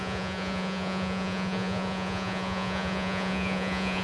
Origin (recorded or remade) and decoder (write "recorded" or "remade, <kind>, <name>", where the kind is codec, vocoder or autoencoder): remade, vocoder, Vocos